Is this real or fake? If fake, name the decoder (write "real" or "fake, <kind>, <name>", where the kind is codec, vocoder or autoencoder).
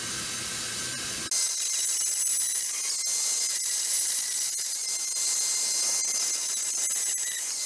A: real